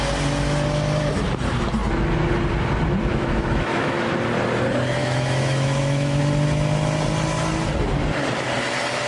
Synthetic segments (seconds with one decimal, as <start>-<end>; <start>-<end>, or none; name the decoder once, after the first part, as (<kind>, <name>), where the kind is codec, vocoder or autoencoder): 3.1-4.1 (autoencoder, DAC-VAE); 5.0-6.2